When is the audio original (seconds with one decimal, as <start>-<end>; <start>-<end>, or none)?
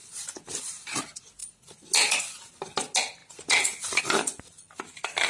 0.0-5.3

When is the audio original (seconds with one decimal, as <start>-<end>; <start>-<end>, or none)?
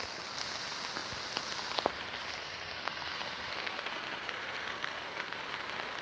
0.0-2.4; 5.4-6.0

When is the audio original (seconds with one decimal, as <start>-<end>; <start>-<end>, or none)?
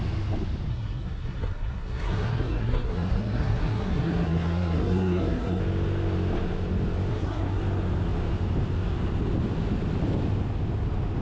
0.0-0.7; 5.6-7.1; 7.6-11.2